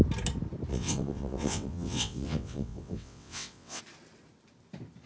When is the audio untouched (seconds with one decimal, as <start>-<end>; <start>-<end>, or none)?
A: 0.0-0.7; 3.8-5.1